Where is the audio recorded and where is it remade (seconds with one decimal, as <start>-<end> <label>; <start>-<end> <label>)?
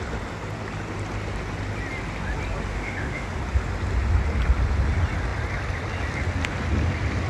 0.0-2.7 recorded; 2.7-3.3 remade; 3.3-7.3 recorded